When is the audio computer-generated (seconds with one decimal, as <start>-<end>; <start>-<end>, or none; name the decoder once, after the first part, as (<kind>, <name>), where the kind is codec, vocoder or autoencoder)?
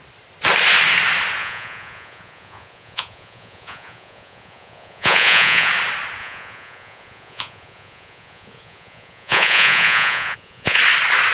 1.4-5.7 (vocoder, Vocos); 6.2-10.8